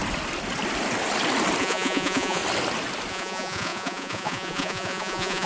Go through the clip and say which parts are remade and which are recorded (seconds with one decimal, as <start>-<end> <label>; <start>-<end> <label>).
0.0-1.6 recorded; 1.6-2.4 remade; 2.4-3.1 recorded; 3.1-5.5 remade